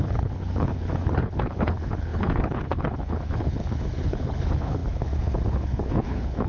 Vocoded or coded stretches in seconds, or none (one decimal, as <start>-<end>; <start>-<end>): 0.0-6.5